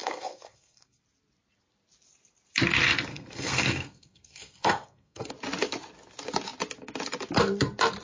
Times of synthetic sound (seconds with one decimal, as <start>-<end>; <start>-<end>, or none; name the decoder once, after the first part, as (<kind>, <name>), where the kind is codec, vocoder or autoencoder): 0.0-1.0 (codec, SNAC); 3.1-5.3